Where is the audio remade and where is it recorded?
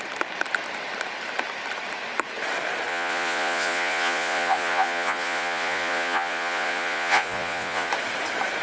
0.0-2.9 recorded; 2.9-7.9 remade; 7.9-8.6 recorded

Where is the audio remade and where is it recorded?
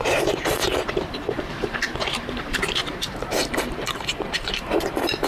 0.0-0.6 remade; 0.6-1.1 recorded; 1.1-5.3 remade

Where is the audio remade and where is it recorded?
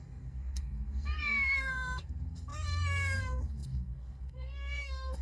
0.0-5.2 remade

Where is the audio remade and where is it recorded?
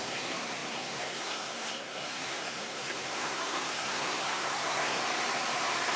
0.0-5.0 remade; 5.0-6.0 recorded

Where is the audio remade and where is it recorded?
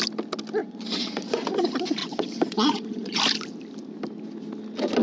0.0-0.6 recorded; 0.6-1.4 remade; 1.4-2.0 recorded; 2.0-3.2 remade; 3.2-5.0 recorded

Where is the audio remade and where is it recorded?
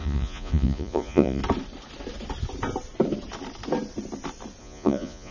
0.0-1.4 remade; 1.4-4.6 recorded; 4.6-5.3 remade